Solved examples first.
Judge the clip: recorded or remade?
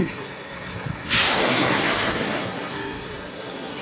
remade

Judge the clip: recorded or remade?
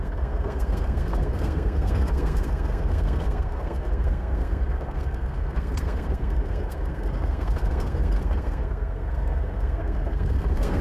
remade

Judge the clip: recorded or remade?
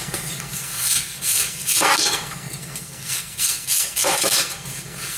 remade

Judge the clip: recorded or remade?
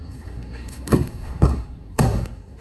remade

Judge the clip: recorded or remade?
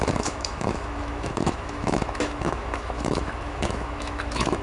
remade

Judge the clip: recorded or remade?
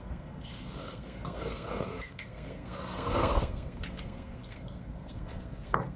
remade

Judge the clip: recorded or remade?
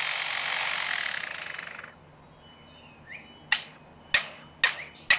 recorded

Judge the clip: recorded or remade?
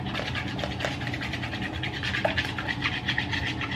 recorded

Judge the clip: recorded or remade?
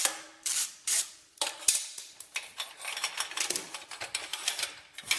remade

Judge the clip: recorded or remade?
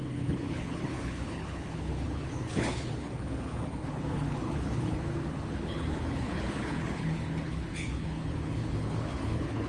remade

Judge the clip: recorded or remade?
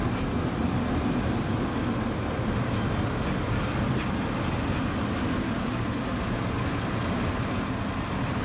recorded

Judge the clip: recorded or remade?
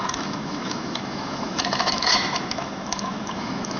remade